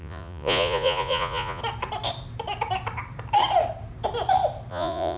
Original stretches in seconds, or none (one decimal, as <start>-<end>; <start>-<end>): 1.6-4.7